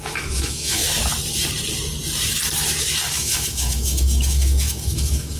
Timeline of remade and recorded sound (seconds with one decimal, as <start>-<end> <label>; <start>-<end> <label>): 0.0-0.8 remade; 0.8-3.1 recorded; 3.1-5.4 remade